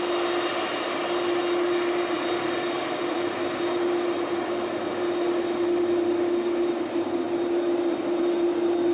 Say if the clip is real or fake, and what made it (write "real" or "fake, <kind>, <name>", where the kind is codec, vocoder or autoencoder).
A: real